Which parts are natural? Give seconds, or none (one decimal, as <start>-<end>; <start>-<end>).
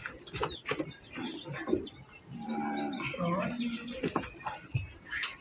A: 0.0-5.4